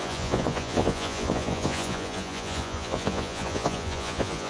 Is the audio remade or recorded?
remade